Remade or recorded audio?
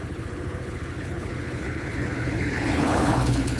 remade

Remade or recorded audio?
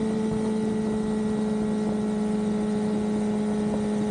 recorded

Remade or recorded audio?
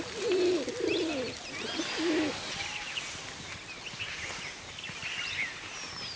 recorded